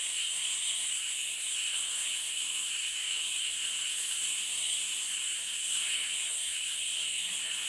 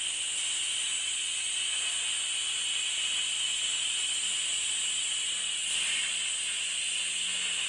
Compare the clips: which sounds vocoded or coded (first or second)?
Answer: first